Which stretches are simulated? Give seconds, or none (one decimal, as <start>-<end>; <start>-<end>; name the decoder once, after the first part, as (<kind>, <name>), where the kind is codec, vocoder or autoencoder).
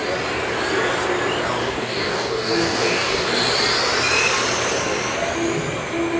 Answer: 1.6-3.3 (codec, DAC)